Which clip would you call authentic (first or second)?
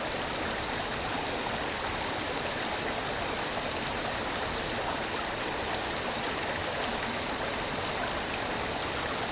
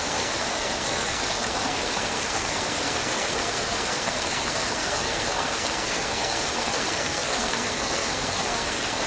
first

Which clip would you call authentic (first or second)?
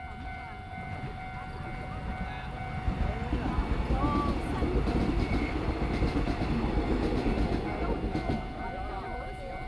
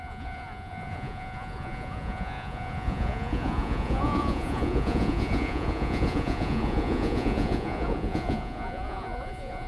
first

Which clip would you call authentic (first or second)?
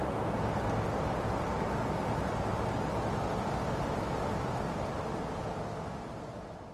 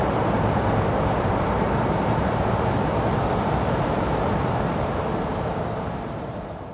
first